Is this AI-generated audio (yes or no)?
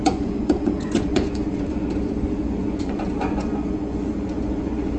yes